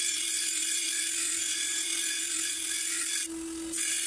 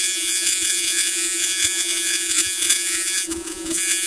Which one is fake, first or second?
second